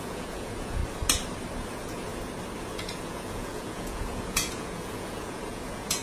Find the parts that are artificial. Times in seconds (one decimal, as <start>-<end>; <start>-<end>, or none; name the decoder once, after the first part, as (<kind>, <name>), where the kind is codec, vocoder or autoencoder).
0.0-0.8 (vocoder, Vocos); 1.7-2.1; 2.6-6.0